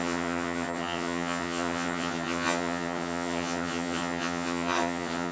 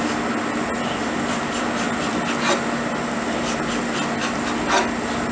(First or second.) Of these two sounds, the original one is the second